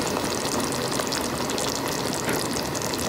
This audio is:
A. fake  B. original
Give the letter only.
B